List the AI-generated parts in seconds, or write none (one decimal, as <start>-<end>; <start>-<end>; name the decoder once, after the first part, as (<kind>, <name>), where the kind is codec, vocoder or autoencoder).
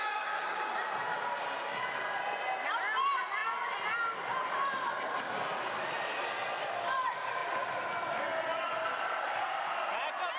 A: 0.0-0.7 (codec, DAC)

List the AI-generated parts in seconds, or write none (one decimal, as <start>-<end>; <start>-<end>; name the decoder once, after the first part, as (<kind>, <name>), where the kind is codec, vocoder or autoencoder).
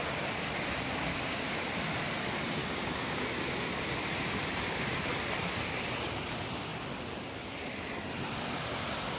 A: 1.1-1.7 (codec, DAC); 2.6-3.5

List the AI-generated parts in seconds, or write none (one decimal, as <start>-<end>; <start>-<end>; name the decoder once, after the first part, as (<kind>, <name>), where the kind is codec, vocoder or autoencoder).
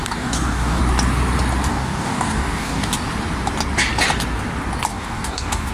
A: 0.0-0.8 (codec, DAC); 1.7-2.9; 4.9-5.7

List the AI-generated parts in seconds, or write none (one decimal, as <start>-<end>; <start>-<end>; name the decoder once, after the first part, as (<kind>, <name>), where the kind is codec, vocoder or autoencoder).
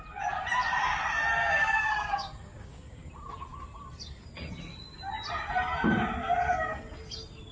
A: 1.4-3.1 (codec, DAC)